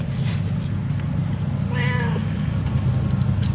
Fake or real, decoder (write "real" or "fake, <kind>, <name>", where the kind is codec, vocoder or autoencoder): real